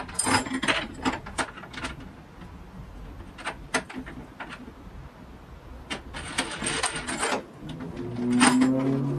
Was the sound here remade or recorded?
recorded